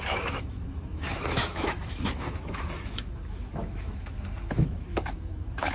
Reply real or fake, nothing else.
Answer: fake